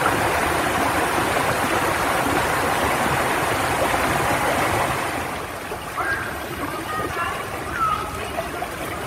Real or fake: real